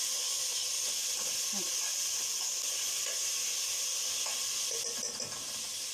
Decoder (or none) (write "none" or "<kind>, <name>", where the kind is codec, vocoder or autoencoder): none